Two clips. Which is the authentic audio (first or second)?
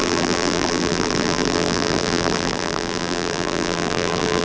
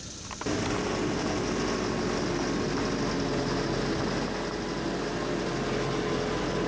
second